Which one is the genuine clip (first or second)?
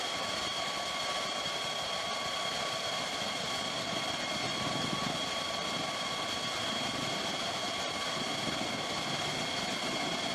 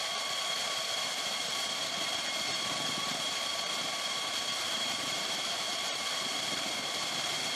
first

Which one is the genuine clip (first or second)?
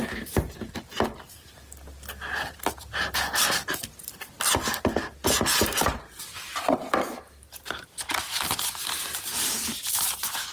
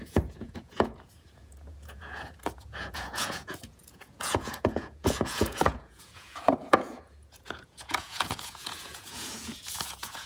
first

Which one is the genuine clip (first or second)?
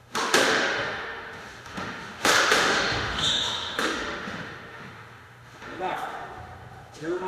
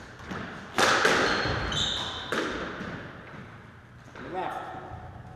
second